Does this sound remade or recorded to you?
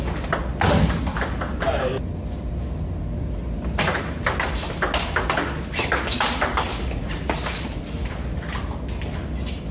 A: recorded